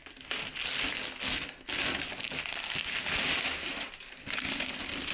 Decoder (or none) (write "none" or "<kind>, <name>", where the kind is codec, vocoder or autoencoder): none